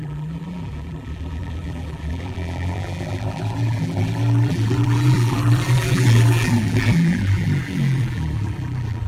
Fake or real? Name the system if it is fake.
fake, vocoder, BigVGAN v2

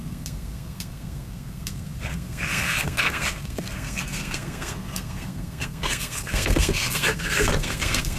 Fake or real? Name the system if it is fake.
fake, codec, SNAC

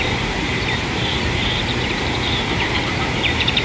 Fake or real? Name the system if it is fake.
fake, vocoder, BigVGAN v2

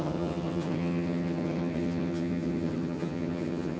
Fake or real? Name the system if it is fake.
fake, vocoder, HiFi-GAN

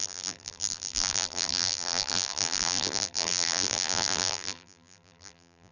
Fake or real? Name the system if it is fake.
fake, vocoder, BigVGAN v2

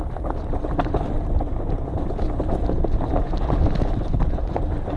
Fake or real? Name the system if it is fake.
fake, vocoder, BigVGAN v2